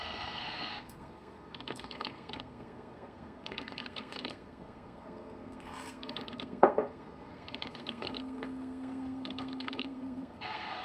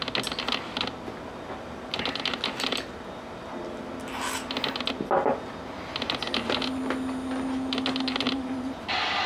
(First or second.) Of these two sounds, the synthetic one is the first